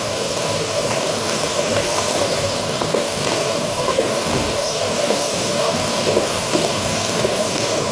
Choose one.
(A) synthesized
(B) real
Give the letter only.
A